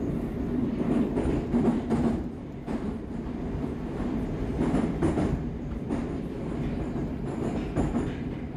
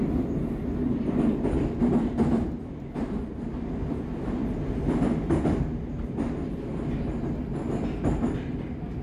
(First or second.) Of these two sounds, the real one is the second